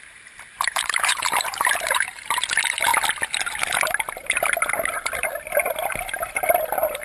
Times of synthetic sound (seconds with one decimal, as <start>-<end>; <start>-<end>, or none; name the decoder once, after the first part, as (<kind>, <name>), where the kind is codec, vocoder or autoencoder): 0.5-2.5 (vocoder, BigVGAN v2)